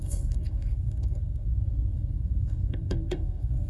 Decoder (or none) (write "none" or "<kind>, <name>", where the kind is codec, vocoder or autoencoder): codec, SNAC